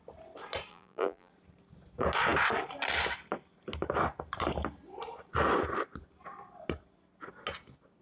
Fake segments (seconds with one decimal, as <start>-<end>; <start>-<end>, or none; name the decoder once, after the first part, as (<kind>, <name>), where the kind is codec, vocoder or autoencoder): 0.7-1.3 (vocoder, BigVGAN v2)